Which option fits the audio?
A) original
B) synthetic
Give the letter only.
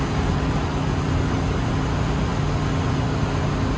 A